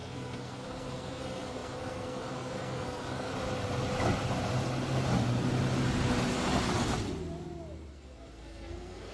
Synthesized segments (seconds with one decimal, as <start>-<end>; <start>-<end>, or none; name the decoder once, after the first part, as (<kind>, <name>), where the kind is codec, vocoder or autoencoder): 0.0-3.3 (codec, SNAC); 7.9-9.1